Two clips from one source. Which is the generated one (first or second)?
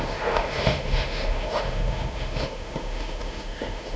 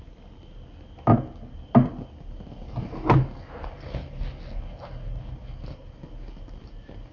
first